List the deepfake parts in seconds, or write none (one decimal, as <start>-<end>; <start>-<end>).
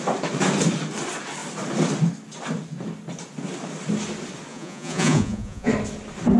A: 4.5-5.7